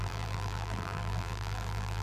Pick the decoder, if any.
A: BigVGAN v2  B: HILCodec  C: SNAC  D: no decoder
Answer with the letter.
A